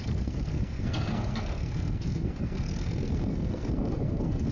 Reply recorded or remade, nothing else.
remade